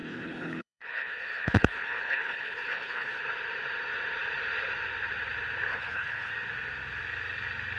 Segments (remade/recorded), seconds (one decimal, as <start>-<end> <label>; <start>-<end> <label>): 0.0-3.2 remade; 3.2-5.7 recorded; 5.7-6.3 remade; 6.3-7.8 recorded